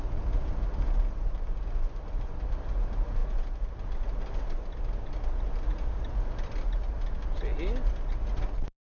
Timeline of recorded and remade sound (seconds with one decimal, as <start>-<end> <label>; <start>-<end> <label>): 0.0-8.8 recorded

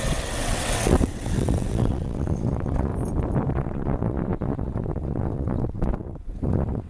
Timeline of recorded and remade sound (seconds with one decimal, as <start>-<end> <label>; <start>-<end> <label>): 0.0-2.9 remade; 2.9-3.5 recorded; 3.5-6.9 remade

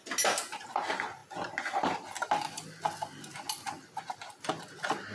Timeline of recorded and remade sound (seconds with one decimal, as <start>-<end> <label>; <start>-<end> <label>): 0.0-5.1 recorded

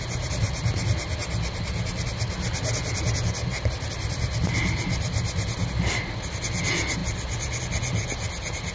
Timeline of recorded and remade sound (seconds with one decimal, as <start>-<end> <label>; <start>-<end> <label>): 0.0-8.7 recorded

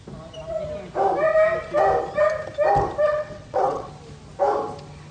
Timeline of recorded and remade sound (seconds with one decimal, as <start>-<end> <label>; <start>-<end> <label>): 0.0-3.1 recorded; 3.1-3.9 remade; 3.9-5.1 recorded

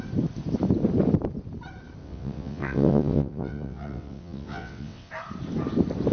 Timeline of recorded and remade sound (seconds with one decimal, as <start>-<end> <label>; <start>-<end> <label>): 0.0-2.0 recorded; 2.0-5.1 remade; 5.1-6.1 recorded

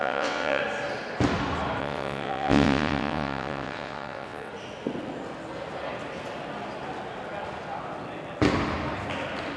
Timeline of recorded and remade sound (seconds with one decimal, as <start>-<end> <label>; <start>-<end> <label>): 0.0-0.6 remade; 0.6-1.8 recorded; 1.8-4.5 remade; 4.5-9.6 recorded

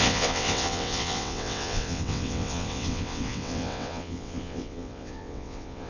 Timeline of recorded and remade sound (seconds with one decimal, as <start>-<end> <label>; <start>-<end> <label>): 0.0-5.9 remade